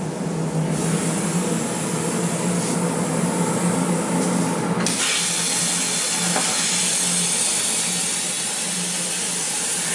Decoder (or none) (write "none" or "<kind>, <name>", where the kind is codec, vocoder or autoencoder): none